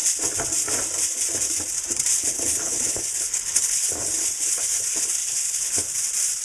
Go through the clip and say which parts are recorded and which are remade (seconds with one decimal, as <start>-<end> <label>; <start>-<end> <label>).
0.0-2.1 recorded; 2.1-5.9 remade; 5.9-6.4 recorded